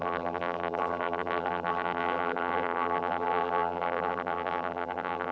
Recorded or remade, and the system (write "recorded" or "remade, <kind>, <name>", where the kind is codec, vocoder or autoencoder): remade, vocoder, BigVGAN v2